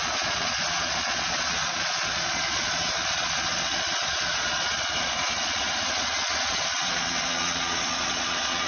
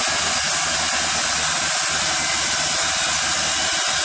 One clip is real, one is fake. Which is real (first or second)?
second